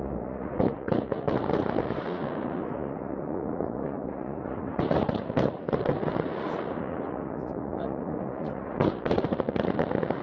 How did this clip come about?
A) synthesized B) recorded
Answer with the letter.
A